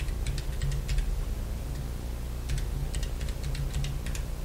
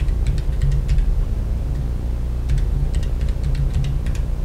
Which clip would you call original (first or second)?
first